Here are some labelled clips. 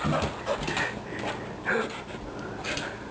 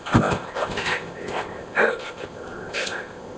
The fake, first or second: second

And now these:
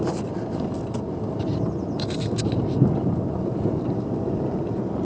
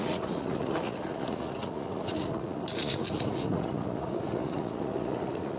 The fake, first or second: second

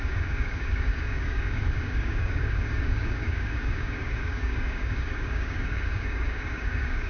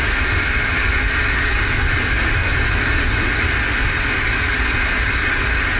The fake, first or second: first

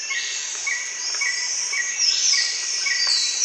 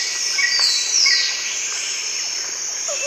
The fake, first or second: first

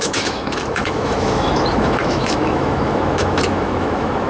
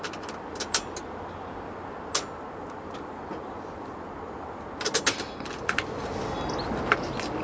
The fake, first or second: first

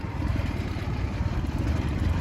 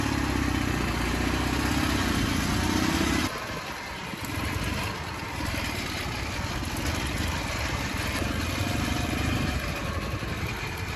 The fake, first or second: first